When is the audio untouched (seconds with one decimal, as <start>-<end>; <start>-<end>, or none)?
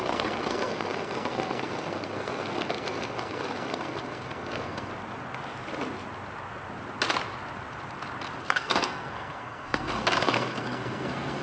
4.9-8.4